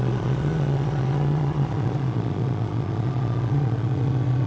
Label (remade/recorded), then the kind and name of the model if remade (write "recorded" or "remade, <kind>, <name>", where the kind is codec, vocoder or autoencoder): remade, vocoder, Vocos